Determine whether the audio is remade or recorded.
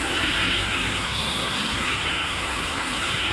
remade